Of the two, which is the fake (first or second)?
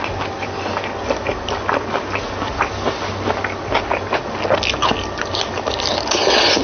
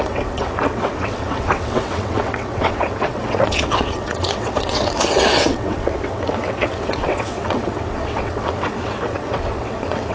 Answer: second